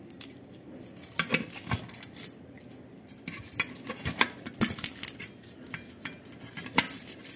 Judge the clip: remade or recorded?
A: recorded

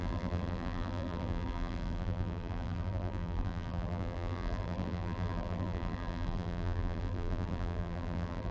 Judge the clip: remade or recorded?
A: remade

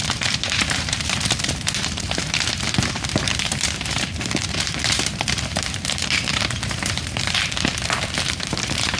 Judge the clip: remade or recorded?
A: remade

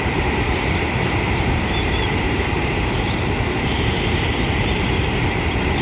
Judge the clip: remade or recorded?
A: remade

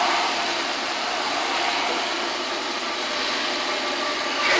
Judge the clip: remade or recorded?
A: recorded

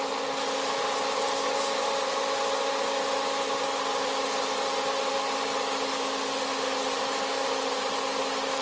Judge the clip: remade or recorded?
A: recorded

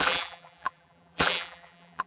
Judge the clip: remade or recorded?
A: remade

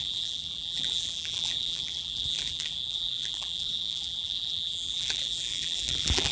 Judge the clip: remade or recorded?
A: remade